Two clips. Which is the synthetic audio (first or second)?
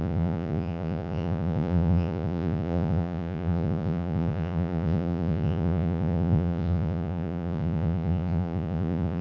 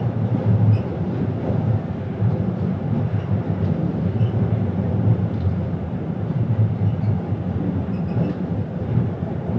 first